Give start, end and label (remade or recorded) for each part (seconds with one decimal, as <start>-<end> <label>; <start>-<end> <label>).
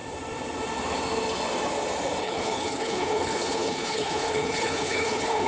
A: 0.0-2.2 recorded; 2.2-5.5 remade